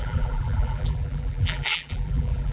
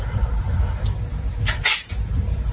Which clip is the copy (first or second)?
first